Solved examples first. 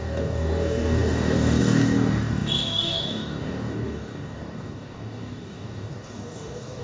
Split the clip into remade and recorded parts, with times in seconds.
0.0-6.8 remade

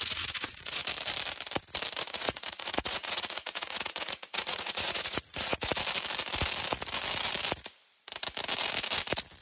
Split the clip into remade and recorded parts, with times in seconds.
0.0-0.8 remade; 0.8-2.1 recorded; 2.1-5.7 remade; 5.7-9.4 recorded

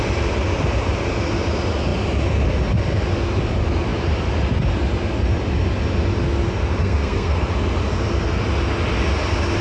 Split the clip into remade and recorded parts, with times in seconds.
0.0-6.8 recorded; 6.8-7.5 remade; 7.5-9.6 recorded

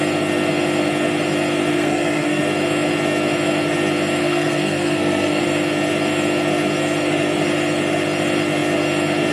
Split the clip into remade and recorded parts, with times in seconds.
0.0-1.7 recorded; 1.7-2.4 remade; 2.4-4.2 recorded; 4.2-5.4 remade; 5.4-9.3 recorded

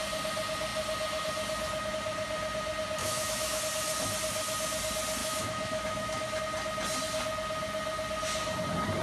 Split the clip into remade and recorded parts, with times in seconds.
0.0-3.0 recorded; 3.0-3.6 remade; 3.6-5.2 recorded; 5.2-6.4 remade; 6.4-9.0 recorded

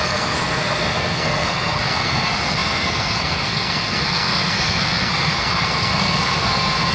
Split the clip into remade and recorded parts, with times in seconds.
0.0-6.9 remade

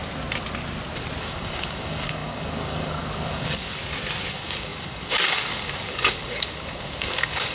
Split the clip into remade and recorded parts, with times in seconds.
0.0-1.2 recorded; 1.2-3.8 remade; 3.8-4.3 recorded; 4.3-7.5 remade